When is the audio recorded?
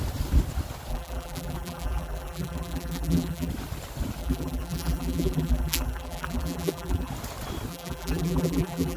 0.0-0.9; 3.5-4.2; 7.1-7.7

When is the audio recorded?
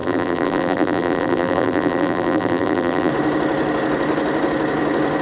3.1-5.2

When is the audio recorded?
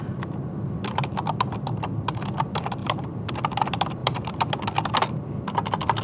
0.0-2.8; 3.3-4.0; 4.5-6.0